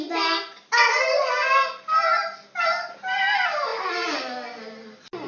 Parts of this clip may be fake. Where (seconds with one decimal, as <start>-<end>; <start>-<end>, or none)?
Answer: none